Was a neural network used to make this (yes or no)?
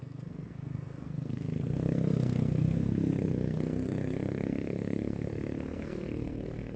yes